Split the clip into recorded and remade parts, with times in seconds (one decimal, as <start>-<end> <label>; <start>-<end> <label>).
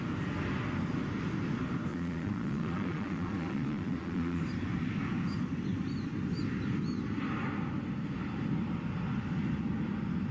0.0-1.9 recorded; 1.9-4.4 remade; 4.4-10.3 recorded